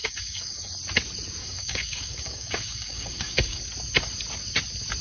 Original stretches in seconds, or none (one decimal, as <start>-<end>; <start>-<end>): 0.8-1.4; 3.6-5.0